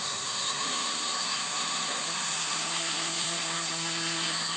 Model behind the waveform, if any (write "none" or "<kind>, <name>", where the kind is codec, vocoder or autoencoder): codec, SNAC